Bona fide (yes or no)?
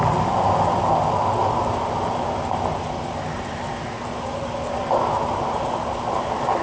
yes